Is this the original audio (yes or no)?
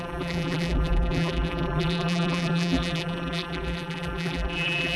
no